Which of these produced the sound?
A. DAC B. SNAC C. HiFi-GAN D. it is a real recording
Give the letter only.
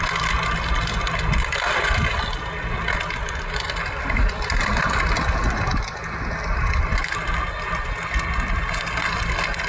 D